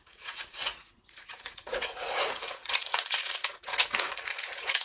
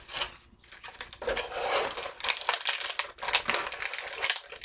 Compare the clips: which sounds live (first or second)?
second